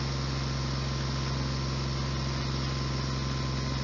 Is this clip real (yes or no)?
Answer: yes